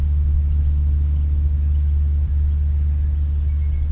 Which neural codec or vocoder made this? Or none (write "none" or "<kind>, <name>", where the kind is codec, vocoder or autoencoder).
none